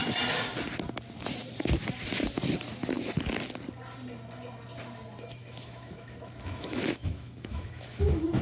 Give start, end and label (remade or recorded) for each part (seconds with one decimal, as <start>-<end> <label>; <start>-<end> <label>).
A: 0.0-5.4 recorded; 5.4-8.4 remade